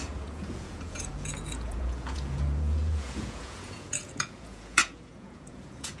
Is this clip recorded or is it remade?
remade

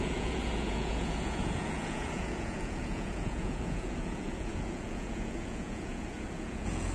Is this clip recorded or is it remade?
remade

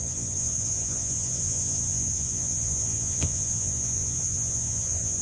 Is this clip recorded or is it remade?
remade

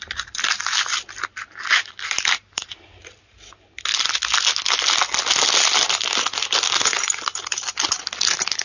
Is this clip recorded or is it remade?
recorded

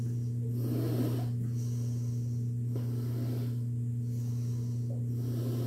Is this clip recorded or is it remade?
recorded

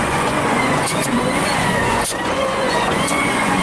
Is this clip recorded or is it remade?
remade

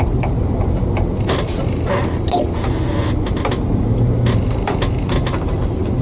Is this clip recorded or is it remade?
recorded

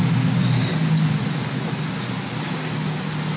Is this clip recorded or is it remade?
recorded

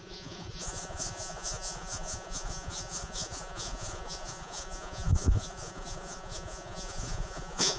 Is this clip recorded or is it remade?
remade